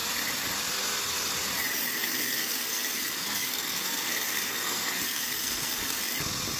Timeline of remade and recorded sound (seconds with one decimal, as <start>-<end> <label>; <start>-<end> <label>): 0.0-2.0 recorded; 2.0-6.0 remade; 6.0-6.6 recorded

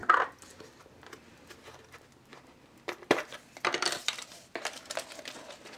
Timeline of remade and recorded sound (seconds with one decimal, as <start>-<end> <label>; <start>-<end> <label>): 0.0-0.8 remade; 0.8-2.3 recorded; 2.3-4.8 remade; 4.8-5.8 recorded

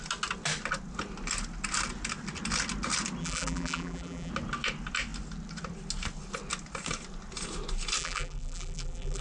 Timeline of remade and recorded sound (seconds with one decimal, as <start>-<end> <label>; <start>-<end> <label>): 0.0-3.2 recorded; 3.2-4.3 remade; 4.3-8.0 recorded; 8.0-9.2 remade